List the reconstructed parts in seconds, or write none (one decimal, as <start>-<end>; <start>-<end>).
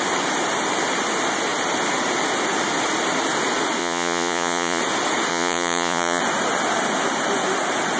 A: 3.8-4.8; 5.3-6.2